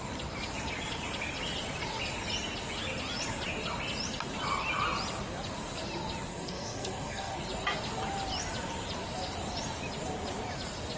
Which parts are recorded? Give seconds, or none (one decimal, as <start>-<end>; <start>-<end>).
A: 0.0-6.3; 7.4-11.0